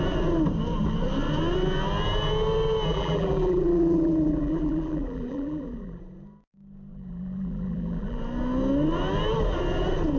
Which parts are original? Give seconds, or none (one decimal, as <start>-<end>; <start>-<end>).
0.0-2.9; 6.0-6.9; 8.2-10.2